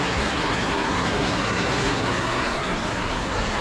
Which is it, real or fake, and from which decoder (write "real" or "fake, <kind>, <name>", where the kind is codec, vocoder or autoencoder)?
fake, codec, SNAC